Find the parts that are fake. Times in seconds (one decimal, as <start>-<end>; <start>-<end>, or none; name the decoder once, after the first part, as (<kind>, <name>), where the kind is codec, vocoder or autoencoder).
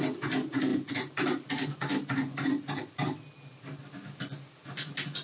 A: none